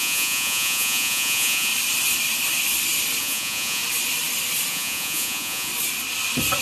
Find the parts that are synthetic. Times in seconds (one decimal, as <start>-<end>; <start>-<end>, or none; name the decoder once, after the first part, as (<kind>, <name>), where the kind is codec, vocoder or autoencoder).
0.0-1.7 (vocoder, Vocos); 3.2-3.8; 4.7-5.7